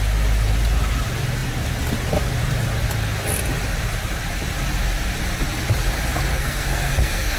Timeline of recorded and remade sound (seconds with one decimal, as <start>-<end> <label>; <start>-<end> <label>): 0.0-6.3 recorded; 6.3-7.4 remade